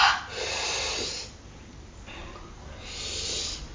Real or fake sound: real